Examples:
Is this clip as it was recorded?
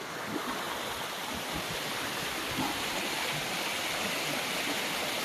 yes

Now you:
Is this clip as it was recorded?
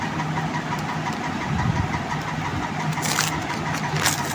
yes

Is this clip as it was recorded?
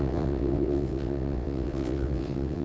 no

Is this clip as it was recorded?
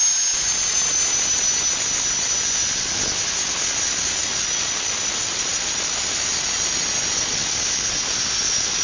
yes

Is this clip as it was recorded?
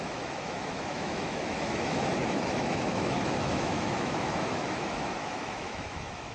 no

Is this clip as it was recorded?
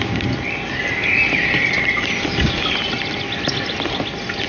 no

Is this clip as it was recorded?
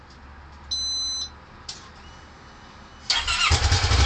yes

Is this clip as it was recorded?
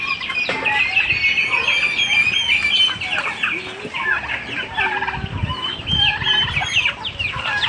yes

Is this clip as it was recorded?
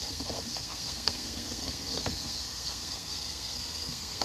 no